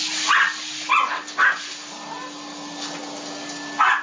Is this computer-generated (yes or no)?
no